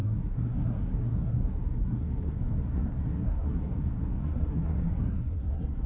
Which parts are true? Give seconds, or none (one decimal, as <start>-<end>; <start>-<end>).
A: none